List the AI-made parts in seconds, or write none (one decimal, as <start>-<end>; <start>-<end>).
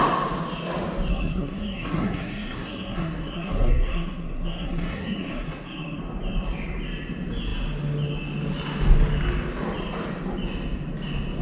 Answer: 1.1-6.0